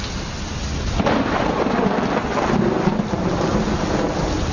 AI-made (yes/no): no